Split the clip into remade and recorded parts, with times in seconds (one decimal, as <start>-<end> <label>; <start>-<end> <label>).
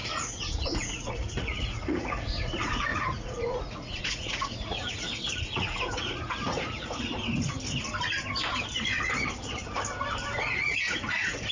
0.0-7.1 remade; 7.1-10.4 recorded; 10.4-11.5 remade